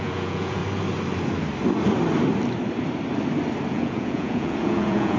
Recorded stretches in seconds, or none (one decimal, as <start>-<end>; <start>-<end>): 0.6-3.7